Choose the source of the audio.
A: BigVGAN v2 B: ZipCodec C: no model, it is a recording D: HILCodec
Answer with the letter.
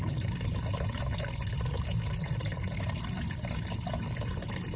C